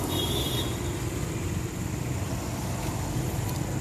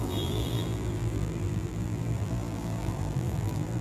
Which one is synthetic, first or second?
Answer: second